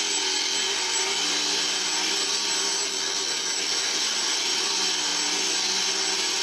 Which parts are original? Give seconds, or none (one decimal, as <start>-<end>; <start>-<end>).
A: 0.0-6.4